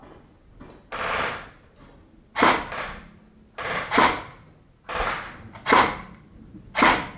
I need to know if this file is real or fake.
real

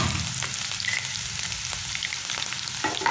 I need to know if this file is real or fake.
real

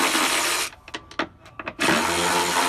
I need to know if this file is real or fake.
real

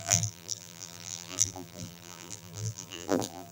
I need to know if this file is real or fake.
fake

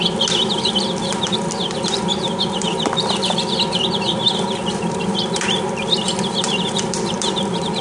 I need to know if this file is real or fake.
fake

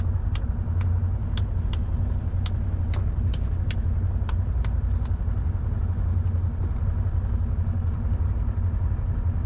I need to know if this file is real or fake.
real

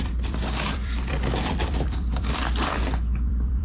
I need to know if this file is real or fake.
fake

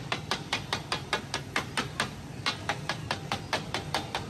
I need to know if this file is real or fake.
fake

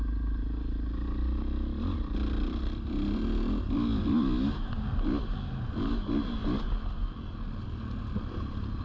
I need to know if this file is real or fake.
real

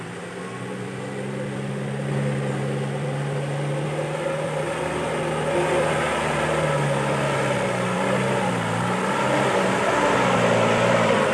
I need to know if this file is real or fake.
real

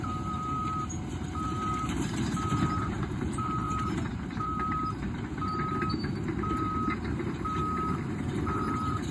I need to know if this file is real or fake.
fake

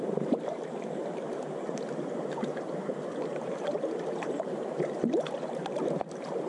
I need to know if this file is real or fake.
fake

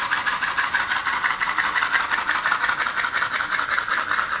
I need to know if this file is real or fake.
fake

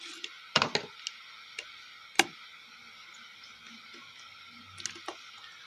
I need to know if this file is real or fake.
real